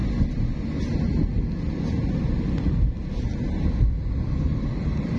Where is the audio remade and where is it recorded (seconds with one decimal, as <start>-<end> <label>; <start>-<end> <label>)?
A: 0.0-5.2 recorded